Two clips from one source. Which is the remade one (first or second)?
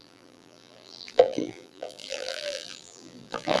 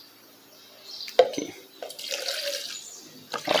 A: first